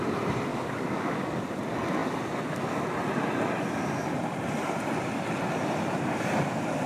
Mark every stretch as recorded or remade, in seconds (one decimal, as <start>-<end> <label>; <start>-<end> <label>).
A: 0.0-0.5 recorded; 0.5-1.6 remade; 1.6-6.9 recorded